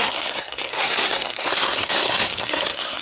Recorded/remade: remade